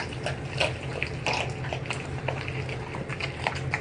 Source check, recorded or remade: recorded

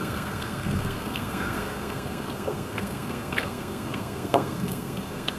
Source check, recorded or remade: remade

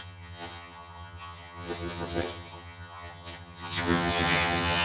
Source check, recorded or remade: remade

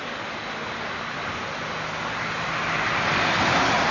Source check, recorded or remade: recorded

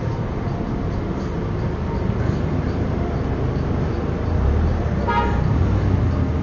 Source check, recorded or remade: recorded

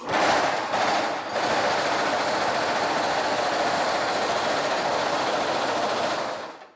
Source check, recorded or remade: recorded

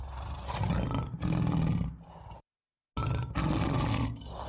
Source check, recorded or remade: recorded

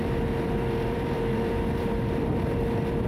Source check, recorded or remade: remade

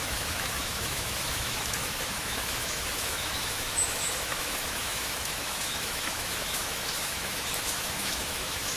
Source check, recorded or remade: remade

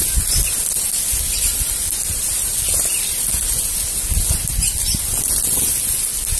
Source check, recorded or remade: recorded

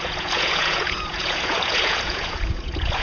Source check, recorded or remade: remade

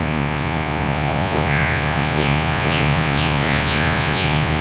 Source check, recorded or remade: remade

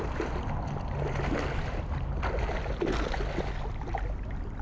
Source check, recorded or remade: recorded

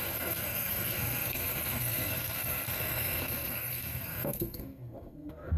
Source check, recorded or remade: remade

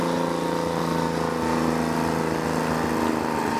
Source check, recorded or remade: recorded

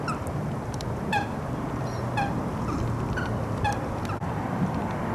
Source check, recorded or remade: recorded